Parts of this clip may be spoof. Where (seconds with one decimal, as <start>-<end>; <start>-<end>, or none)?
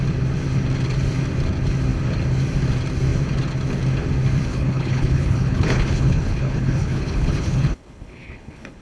4.5-8.8